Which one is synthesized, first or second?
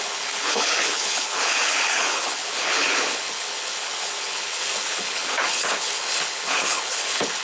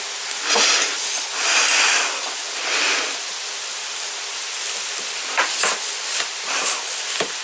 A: first